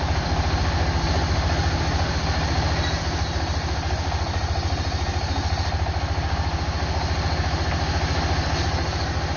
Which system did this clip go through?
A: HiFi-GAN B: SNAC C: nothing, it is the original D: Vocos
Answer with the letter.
C